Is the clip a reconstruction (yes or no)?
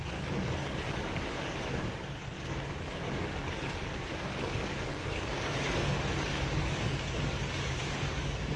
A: yes